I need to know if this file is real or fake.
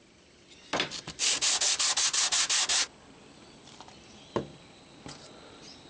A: real